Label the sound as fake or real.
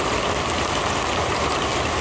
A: real